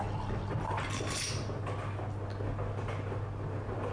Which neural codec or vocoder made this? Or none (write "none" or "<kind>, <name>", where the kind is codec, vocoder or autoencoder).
none